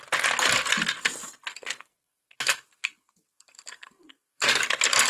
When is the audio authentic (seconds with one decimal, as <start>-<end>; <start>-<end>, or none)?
0.0-1.5; 4.6-5.1